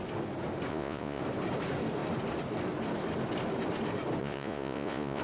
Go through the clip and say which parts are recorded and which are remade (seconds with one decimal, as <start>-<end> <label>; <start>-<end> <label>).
0.0-0.7 recorded; 0.7-1.2 remade; 1.2-4.2 recorded; 4.2-5.2 remade